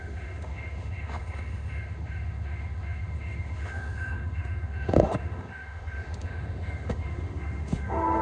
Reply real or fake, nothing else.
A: fake